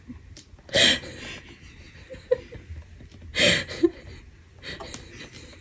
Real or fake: real